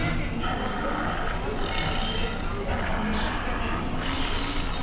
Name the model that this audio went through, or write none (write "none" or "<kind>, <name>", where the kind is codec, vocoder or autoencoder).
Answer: none